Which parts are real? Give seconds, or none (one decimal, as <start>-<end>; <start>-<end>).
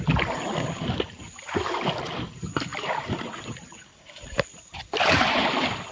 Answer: 0.0-5.9